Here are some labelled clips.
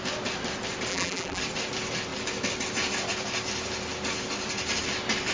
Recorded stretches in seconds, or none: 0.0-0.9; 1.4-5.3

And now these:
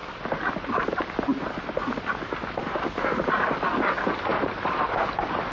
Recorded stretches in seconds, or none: 3.3-4.3